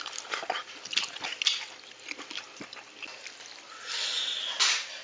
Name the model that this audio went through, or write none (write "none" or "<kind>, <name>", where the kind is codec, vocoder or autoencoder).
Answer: none